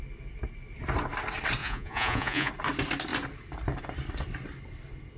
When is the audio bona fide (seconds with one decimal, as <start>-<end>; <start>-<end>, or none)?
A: 0.0-1.6; 2.5-5.2